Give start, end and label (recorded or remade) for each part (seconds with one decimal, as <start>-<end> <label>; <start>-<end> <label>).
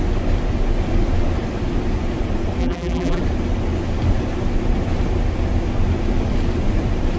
0.0-2.6 recorded; 2.6-3.2 remade; 3.2-7.2 recorded